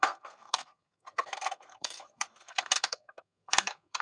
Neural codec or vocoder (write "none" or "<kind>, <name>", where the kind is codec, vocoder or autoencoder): codec, SNAC